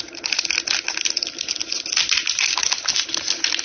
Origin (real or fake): real